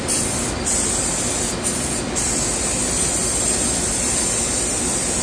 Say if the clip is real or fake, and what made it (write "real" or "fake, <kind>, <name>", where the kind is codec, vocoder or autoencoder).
real